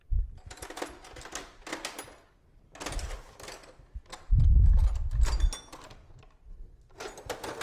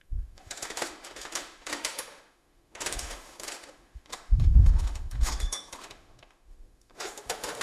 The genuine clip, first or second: first